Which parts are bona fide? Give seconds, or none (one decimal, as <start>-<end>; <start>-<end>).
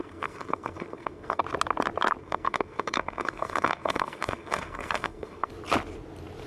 1.4-2.2; 5.5-6.5